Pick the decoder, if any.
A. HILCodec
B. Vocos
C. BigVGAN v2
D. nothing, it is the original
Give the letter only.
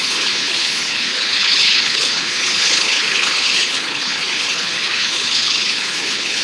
A